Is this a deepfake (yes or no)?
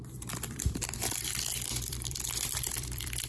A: yes